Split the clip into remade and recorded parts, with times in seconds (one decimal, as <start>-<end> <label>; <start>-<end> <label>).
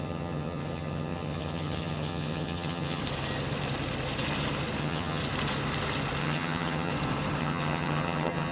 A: 0.0-3.0 remade; 3.0-4.8 recorded; 4.8-5.2 remade; 5.2-6.2 recorded; 6.2-6.9 remade; 6.9-7.4 recorded; 7.4-8.5 remade